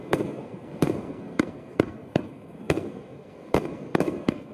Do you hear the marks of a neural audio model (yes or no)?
yes